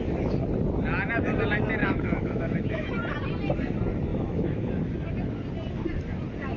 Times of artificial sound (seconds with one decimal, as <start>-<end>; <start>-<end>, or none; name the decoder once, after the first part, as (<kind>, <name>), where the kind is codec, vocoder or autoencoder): 1.8-2.9 (autoencoder, DAC-VAE); 4.1-4.7